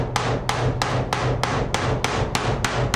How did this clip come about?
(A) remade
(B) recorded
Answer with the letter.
B